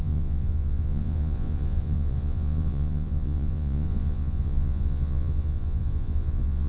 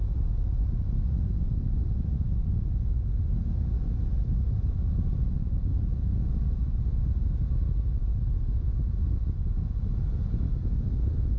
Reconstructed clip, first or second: first